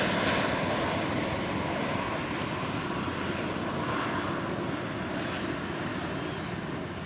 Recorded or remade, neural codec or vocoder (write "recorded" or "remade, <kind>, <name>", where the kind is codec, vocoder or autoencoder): recorded